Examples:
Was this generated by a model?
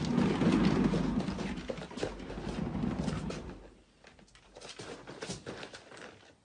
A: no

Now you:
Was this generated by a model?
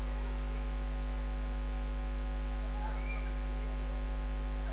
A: no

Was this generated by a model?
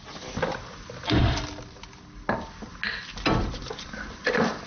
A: no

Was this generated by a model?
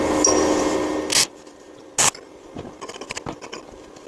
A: no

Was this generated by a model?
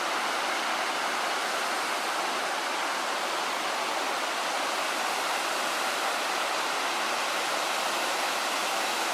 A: no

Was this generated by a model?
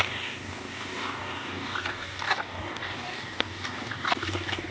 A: yes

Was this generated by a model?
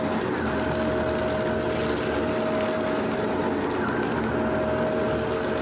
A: no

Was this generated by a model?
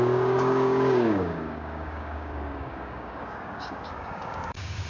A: yes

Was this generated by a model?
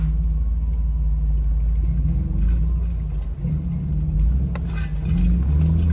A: no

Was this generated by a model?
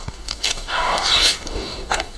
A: yes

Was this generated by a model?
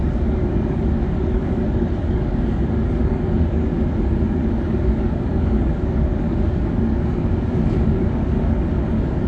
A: yes